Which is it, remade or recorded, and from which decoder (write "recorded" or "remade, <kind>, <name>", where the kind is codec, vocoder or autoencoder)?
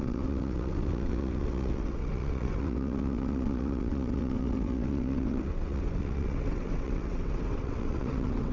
remade, vocoder, WaveNeXt